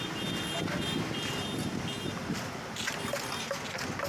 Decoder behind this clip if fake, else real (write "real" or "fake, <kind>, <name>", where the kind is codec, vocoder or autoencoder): real